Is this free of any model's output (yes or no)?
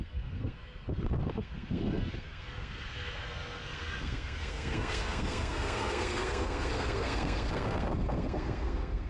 no